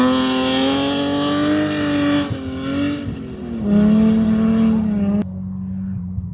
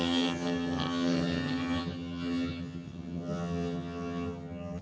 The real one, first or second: first